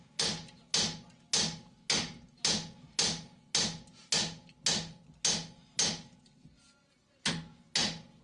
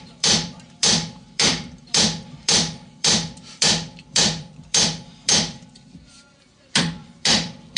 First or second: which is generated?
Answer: second